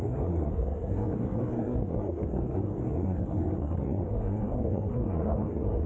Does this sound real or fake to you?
fake